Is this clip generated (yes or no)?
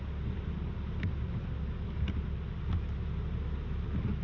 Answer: no